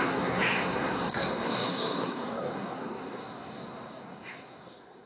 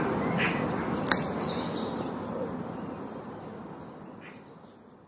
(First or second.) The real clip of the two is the second